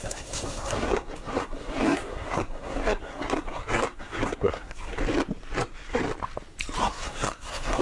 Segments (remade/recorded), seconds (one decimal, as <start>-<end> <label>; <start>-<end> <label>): 0.0-5.0 remade; 5.0-5.6 recorded; 5.6-6.0 remade; 6.0-6.8 recorded; 6.8-7.8 remade